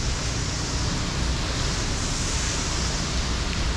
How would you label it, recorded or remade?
recorded